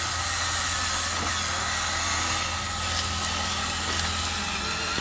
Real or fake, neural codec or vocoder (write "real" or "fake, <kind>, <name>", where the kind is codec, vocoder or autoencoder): real